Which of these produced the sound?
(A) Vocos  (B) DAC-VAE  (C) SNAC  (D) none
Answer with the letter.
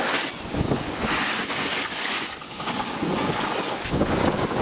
A